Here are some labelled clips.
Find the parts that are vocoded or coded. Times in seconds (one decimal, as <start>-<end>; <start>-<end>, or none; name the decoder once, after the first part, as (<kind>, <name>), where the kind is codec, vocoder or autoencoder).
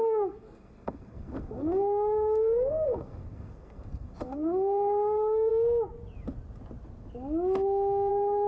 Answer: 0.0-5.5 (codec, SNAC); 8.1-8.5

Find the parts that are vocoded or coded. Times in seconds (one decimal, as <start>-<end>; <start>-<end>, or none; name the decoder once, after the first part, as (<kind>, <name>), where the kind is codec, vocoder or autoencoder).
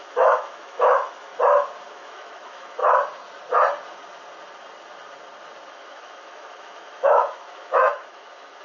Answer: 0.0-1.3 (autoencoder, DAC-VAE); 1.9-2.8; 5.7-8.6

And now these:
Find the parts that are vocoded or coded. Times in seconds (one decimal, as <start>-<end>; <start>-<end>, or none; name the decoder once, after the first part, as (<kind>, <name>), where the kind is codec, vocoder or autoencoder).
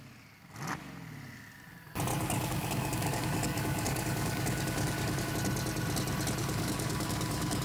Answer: 2.1-5.3 (codec, DAC); 6.4-7.6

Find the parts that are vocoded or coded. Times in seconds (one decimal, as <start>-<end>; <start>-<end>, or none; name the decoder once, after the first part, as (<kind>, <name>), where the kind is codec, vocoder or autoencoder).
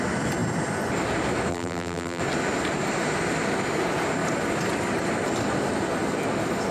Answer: 1.5-2.2 (vocoder, BigVGAN v2)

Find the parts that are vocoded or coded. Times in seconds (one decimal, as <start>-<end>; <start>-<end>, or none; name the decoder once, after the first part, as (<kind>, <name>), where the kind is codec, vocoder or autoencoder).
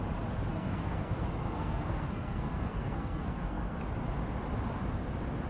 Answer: 0.5-3.8 (codec, SNAC)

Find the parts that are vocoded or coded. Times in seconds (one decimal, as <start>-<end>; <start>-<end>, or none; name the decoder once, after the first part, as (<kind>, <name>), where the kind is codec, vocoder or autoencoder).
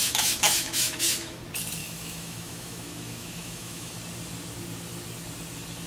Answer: 0.0-1.4 (autoencoder, DAC-VAE); 1.8-3.9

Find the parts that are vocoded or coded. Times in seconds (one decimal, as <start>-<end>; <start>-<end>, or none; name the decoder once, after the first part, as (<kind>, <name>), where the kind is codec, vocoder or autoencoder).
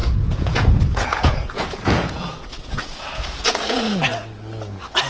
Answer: 0.0-4.1 (vocoder, Vocos)